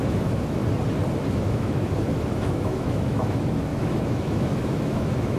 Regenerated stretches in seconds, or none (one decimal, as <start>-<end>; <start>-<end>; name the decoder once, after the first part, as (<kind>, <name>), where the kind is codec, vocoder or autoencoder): 0.0-0.6 (autoencoder, DAC-VAE); 1.3-5.4